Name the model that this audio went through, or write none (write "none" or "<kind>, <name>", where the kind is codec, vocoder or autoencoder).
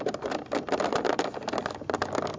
none